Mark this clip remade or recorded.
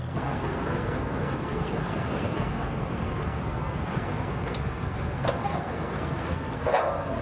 remade